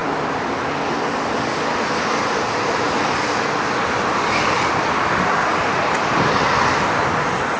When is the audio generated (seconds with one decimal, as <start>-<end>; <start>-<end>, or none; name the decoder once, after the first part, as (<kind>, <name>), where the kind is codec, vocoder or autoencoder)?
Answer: 0.0-4.5 (vocoder, BigVGAN v2)